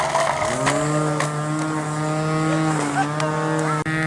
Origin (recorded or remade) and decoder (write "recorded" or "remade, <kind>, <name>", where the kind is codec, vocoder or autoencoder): recorded